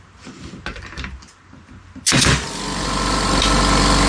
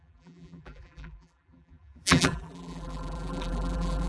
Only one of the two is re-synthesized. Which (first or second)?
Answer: second